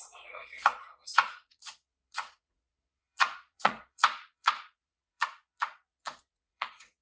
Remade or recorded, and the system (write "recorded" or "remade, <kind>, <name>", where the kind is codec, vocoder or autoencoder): remade, vocoder, Vocos